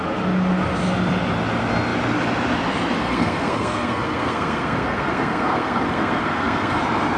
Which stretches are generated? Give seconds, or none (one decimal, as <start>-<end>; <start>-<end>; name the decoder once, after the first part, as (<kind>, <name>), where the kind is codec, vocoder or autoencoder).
3.0-6.8 (codec, SNAC)